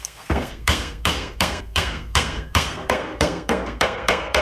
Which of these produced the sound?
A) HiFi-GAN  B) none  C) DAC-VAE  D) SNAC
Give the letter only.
D